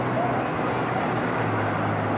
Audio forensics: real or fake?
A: real